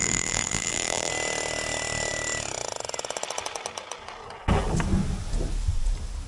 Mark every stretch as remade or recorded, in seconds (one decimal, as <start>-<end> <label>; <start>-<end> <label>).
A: 0.0-1.1 remade; 1.1-6.3 recorded